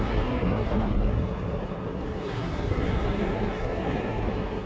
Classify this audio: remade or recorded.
remade